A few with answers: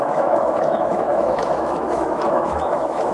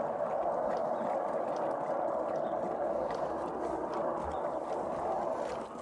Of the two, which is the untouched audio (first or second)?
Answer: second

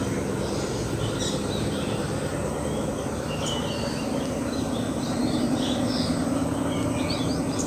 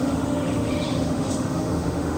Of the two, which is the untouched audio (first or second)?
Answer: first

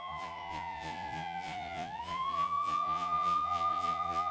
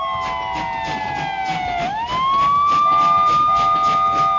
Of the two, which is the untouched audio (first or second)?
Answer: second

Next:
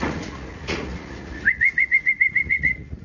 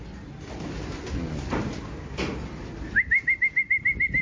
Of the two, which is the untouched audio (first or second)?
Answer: second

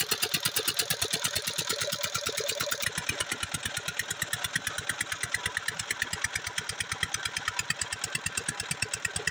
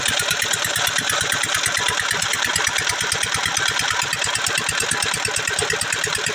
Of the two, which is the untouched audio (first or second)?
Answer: first